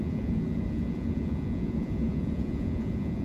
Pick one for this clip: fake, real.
fake